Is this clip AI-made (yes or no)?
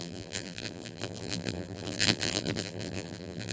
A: yes